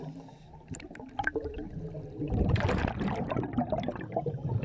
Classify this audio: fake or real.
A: fake